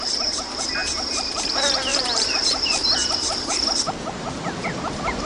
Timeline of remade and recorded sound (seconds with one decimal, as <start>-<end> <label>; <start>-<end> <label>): 0.0-5.2 remade